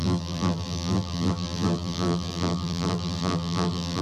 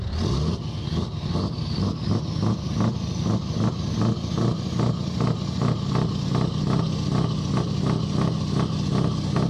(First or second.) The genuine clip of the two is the second